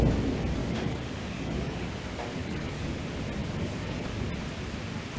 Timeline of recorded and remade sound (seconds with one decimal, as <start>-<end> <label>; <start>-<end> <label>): 0.0-0.6 recorded; 0.6-1.9 remade; 1.9-2.4 recorded; 2.4-3.0 remade; 3.0-3.4 recorded; 3.4-4.3 remade; 4.3-5.2 recorded